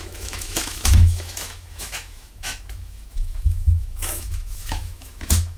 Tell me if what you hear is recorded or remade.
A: remade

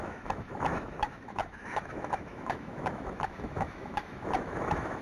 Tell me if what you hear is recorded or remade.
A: remade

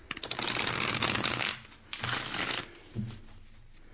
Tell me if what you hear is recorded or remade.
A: recorded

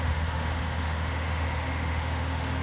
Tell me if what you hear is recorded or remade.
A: remade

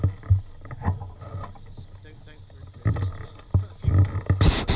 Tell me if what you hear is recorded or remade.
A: recorded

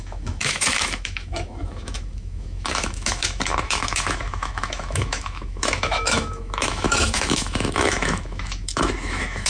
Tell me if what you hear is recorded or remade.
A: remade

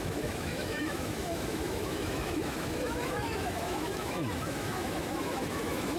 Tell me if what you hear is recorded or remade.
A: remade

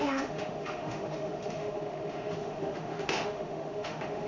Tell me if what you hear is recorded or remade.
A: remade